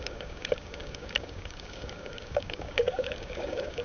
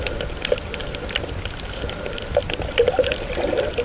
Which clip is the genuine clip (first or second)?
second